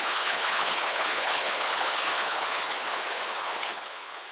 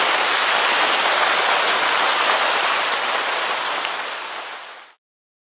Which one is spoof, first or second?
first